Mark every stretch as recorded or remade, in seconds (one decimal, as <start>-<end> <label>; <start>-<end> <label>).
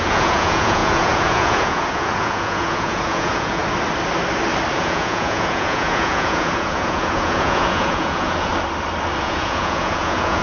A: 0.0-3.6 remade; 3.6-4.7 recorded; 4.7-8.5 remade; 8.5-9.2 recorded; 9.2-10.4 remade